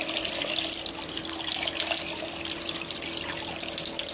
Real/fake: real